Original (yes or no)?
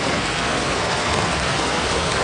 no